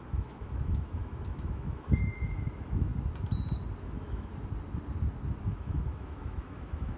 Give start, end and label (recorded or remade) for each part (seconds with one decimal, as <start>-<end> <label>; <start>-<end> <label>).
0.0-2.9 remade; 2.9-3.8 recorded; 3.8-4.3 remade; 4.3-5.4 recorded; 5.4-7.0 remade